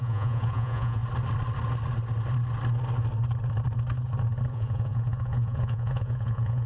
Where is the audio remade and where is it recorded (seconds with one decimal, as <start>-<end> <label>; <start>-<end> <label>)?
0.0-1.0 remade; 1.0-4.5 recorded; 4.5-6.7 remade